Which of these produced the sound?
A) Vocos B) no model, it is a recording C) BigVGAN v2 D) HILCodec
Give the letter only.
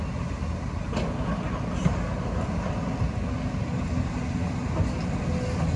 B